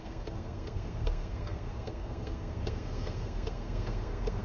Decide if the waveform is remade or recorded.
remade